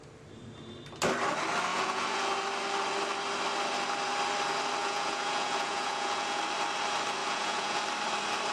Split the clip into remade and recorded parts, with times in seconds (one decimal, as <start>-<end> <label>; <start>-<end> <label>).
0.0-1.7 recorded; 1.7-2.3 remade; 2.3-4.8 recorded; 4.8-6.4 remade; 6.4-7.2 recorded; 7.2-7.8 remade; 7.8-8.5 recorded